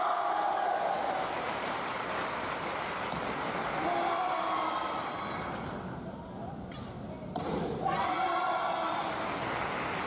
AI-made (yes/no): no